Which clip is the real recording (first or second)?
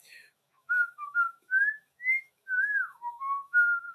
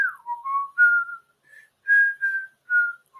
second